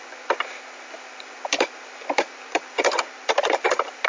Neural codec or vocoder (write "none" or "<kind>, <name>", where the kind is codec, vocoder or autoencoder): none